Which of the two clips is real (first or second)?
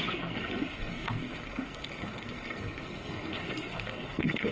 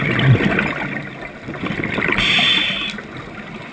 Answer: second